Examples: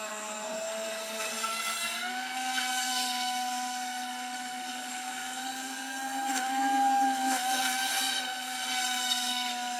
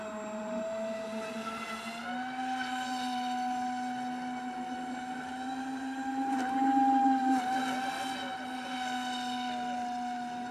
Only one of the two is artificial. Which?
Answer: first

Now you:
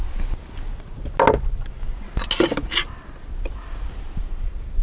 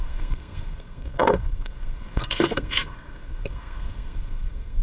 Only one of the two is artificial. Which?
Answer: second